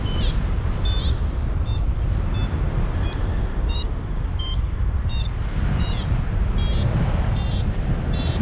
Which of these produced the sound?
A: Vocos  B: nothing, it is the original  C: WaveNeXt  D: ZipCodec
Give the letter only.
B